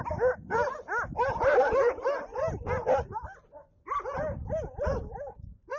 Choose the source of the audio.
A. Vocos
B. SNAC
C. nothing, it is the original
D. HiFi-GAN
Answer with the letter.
C